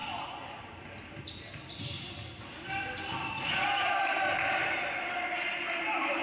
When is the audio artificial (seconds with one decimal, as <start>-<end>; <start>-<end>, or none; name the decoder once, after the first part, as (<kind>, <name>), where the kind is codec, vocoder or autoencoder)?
none